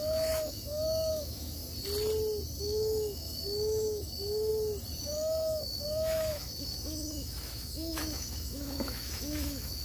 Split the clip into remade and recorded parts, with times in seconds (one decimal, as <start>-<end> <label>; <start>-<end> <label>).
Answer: 0.0-1.6 remade; 1.6-2.6 recorded; 2.6-4.5 remade; 4.5-5.0 recorded; 5.0-9.8 remade